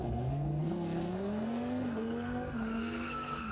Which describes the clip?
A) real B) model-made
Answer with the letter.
B